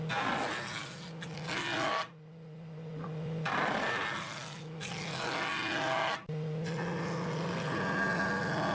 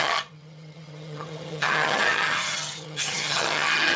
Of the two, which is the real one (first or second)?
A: first